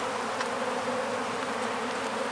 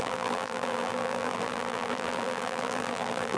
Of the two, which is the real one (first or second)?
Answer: first